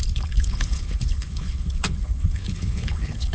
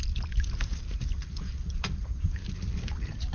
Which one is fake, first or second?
first